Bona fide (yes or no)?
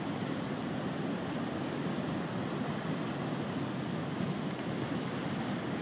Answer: yes